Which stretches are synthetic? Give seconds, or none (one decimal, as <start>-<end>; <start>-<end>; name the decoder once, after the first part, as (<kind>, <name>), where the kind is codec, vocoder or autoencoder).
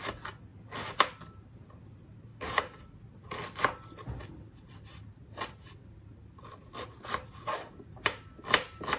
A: 2.3-2.9 (codec, DAC); 7.2-7.7